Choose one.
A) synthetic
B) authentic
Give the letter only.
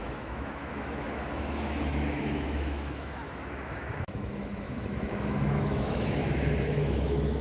A